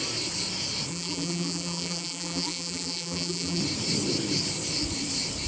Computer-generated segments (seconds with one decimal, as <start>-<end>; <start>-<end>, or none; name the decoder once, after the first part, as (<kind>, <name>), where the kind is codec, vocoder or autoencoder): 0.9-3.6 (vocoder, BigVGAN v2)